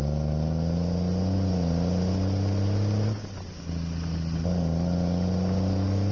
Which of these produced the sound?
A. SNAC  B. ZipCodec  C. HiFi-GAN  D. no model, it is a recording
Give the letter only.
D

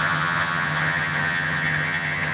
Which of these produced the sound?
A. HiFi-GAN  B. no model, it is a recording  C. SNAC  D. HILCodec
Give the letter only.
A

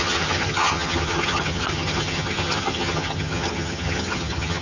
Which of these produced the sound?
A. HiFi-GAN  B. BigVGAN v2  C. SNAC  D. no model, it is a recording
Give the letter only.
A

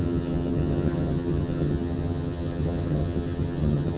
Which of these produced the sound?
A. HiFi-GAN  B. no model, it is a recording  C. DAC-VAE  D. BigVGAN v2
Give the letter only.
A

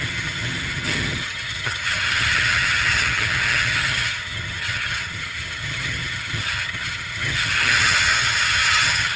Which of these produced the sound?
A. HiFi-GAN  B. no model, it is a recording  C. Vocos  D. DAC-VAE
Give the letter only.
A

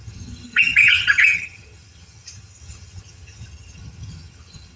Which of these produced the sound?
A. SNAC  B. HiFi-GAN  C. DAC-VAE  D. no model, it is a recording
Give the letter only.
B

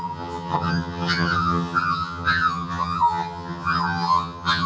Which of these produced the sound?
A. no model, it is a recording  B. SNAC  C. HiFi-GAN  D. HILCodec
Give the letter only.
C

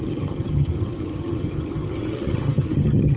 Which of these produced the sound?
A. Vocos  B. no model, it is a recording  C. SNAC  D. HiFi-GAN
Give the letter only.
D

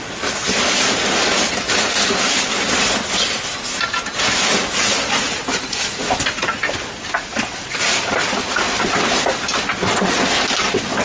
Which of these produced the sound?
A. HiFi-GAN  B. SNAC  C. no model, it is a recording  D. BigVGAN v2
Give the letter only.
C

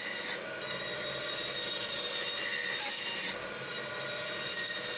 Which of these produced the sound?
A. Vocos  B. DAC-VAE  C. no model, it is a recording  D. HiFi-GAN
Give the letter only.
C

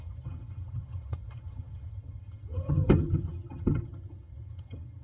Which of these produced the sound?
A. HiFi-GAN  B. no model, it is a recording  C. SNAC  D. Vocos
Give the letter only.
A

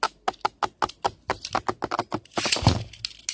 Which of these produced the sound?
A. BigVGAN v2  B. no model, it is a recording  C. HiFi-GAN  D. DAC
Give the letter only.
B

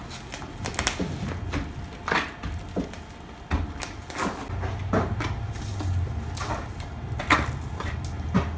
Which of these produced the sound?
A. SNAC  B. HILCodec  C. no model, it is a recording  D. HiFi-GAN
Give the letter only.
C